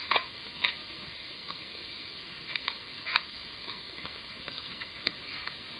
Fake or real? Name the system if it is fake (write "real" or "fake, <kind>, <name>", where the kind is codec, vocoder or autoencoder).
fake, codec, SNAC